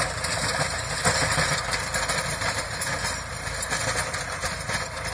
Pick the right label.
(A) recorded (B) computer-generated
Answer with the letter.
A